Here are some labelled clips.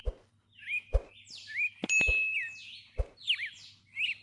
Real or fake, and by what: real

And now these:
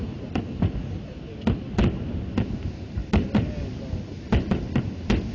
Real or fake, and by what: real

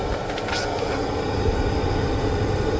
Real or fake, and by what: real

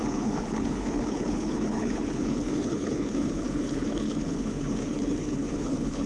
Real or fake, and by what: fake, codec, HILCodec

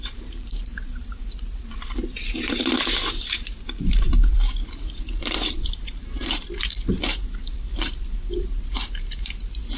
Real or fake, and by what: fake, vocoder, BigVGAN v2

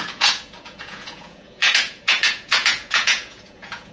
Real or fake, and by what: fake, vocoder, Vocos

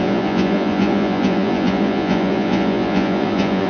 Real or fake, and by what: fake, vocoder, Vocos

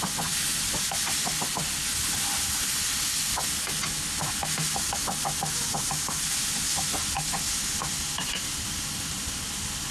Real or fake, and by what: real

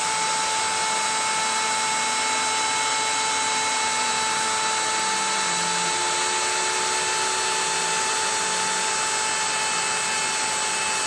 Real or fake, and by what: real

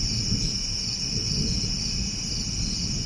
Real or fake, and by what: real